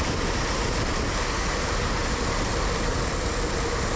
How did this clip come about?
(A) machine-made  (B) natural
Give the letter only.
B